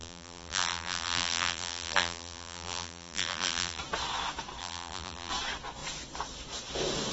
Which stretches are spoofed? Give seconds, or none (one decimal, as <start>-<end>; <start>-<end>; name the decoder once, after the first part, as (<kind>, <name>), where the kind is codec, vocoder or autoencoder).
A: 0.0-3.8 (vocoder, BigVGAN v2); 4.6-5.3